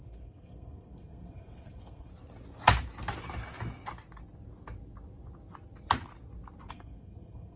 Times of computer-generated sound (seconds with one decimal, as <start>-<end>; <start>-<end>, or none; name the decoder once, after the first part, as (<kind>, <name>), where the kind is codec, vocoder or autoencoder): 0.0-2.1 (codec, SNAC); 6.7-7.6